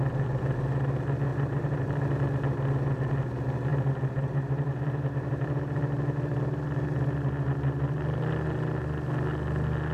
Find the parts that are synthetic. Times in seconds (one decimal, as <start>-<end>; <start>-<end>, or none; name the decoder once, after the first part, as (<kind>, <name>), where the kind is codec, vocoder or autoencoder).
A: 1.3-2.0 (vocoder, BigVGAN v2); 3.7-5.8

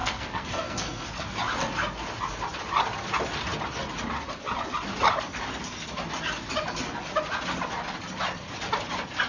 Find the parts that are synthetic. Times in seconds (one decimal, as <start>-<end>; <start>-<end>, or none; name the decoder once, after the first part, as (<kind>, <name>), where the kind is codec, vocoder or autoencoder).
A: 0.0-1.2 (codec, SNAC)

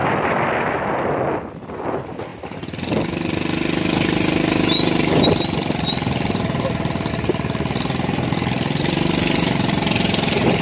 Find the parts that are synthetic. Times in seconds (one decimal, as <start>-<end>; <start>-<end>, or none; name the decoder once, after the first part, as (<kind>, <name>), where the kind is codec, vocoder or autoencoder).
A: none

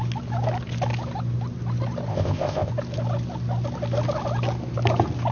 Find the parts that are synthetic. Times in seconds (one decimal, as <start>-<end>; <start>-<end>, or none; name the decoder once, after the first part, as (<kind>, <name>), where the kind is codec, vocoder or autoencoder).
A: 2.1-2.7 (codec, ZipCodec)

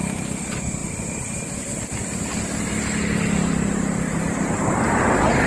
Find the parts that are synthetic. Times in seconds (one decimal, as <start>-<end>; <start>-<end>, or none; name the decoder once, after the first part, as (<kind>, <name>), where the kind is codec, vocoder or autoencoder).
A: none